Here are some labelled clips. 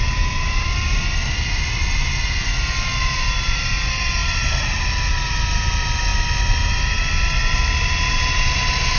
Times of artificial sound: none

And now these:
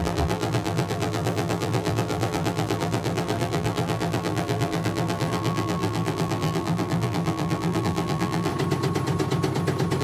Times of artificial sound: 0.0-8.5 (vocoder, BigVGAN v2)

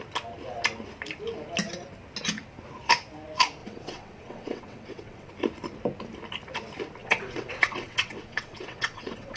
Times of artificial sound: 3.6-5.3 (vocoder, WaveNeXt); 7.0-9.4

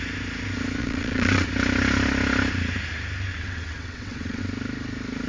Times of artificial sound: 0.8-1.5 (vocoder, WaveNeXt); 3.3-4.4

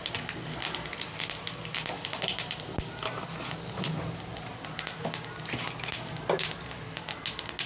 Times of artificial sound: none